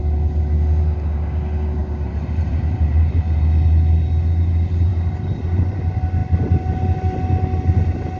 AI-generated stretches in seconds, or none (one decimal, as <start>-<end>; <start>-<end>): 1.8-3.1; 4.9-5.8